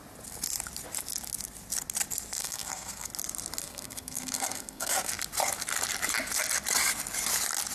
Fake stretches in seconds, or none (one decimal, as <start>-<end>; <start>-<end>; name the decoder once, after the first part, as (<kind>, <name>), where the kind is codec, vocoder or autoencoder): 2.4-3.1 (codec, SNAC); 3.6-5.1